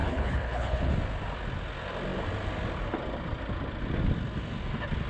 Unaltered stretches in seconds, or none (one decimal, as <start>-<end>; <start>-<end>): 0.9-5.1